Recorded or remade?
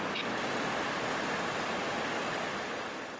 recorded